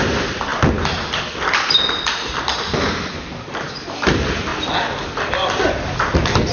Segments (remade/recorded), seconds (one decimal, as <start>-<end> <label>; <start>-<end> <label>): 0.0-6.5 recorded